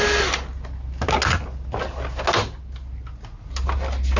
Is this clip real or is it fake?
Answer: real